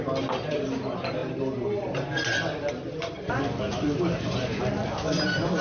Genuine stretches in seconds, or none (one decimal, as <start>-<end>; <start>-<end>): 0.0-5.6